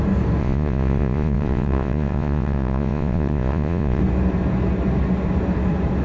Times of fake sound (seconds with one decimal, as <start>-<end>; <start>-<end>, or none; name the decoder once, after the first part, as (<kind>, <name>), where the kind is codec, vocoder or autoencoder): 0.4-4.0 (vocoder, Vocos)